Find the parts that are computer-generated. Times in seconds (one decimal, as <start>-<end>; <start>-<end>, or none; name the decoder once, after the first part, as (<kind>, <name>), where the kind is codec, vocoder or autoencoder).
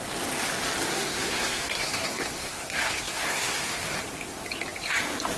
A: 0.9-3.8 (codec, SNAC)